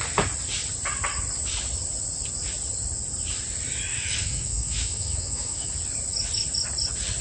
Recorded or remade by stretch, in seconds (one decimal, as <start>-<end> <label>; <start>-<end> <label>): 0.0-3.9 recorded; 3.9-5.7 remade; 5.7-7.2 recorded